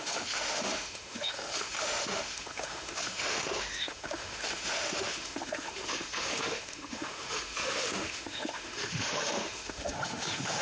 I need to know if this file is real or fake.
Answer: fake